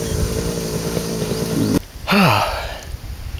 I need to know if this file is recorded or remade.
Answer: remade